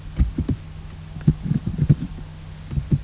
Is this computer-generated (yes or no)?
no